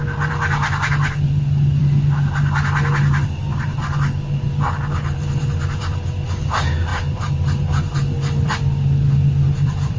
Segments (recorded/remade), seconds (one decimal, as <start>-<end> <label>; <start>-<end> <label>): 0.0-6.9 recorded; 6.9-10.0 remade